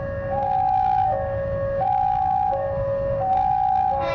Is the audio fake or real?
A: fake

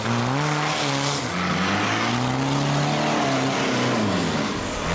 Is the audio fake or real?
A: real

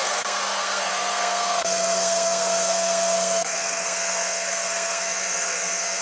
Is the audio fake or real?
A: fake